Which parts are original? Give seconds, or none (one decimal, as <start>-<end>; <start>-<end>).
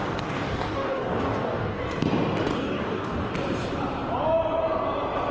1.8-2.5; 3.3-5.3